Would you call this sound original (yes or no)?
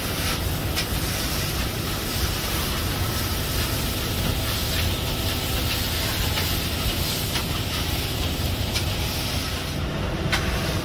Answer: yes